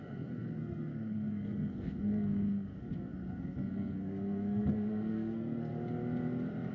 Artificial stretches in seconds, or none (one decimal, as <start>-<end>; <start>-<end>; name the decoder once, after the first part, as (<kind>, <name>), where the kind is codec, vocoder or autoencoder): 0.0-5.7 (codec, SNAC)